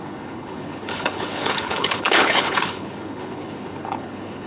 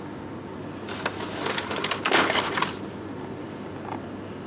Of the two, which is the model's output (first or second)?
first